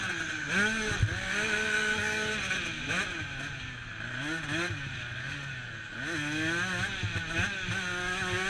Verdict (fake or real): real